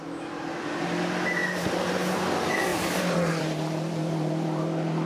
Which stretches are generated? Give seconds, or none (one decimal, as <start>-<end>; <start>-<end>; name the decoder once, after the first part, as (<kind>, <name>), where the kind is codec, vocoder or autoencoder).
0.0-1.4 (vocoder, BigVGAN v2); 2.1-5.1

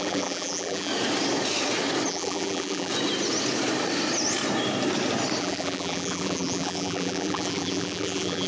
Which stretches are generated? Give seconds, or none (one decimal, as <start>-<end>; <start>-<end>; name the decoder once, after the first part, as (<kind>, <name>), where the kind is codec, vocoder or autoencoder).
0.0-0.9 (vocoder, BigVGAN v2); 2.1-2.9; 5.4-8.5

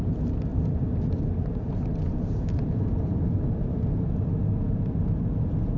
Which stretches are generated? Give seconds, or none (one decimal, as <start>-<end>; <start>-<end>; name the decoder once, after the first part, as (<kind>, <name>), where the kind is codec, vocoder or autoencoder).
0.5-4.0 (vocoder, BigVGAN v2)

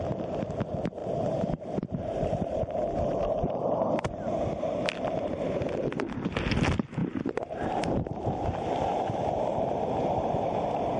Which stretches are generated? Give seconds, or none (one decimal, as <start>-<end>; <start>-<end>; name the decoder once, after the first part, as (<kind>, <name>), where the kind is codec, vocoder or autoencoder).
1.0-2.6 (vocoder, BigVGAN v2); 3.1-3.6; 7.0-9.3